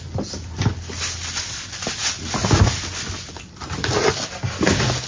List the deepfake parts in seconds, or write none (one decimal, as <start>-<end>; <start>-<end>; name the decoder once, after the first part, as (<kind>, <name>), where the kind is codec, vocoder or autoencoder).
none